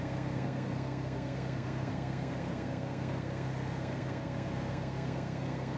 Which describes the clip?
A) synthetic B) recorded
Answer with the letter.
A